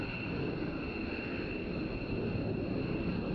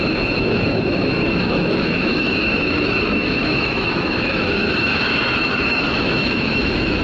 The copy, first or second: second